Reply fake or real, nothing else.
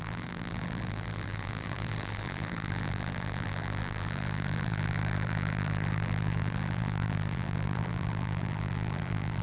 fake